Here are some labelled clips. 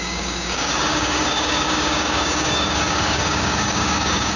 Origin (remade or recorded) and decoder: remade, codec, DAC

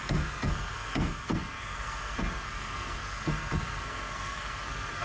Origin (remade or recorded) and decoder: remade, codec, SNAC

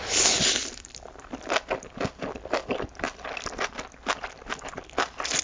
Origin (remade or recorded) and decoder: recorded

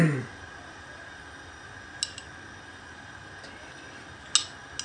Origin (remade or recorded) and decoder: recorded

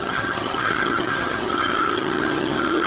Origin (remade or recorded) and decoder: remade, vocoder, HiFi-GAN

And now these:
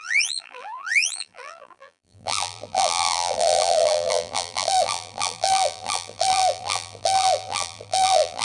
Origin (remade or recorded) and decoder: remade, vocoder, BigVGAN v2